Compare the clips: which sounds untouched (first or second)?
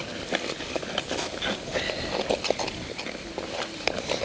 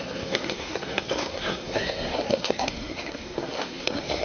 first